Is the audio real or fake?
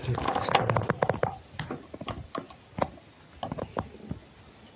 real